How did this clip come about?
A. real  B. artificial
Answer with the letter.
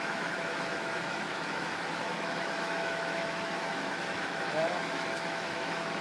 B